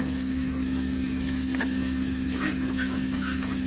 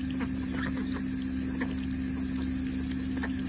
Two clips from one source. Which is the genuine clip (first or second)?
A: second